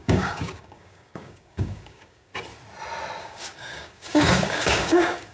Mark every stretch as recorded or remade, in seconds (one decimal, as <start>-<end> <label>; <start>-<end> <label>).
0.0-2.3 remade; 2.3-3.2 recorded; 3.2-5.3 remade